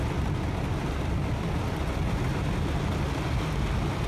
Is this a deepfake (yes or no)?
no